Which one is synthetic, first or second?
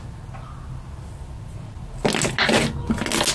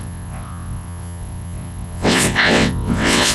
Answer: second